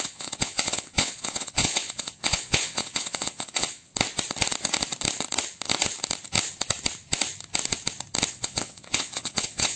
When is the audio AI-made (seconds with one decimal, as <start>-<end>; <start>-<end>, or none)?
0.0-3.9; 8.3-9.8